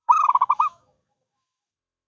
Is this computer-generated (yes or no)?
yes